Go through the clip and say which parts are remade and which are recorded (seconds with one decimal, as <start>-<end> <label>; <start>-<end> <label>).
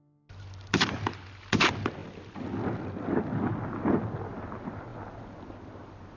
0.0-6.2 recorded